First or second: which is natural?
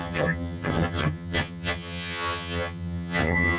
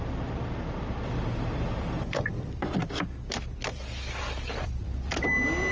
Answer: second